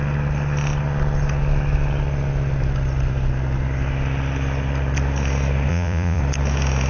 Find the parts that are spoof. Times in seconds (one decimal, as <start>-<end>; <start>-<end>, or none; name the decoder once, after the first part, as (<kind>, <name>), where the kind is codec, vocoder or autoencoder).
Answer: 5.7-6.2 (vocoder, Vocos)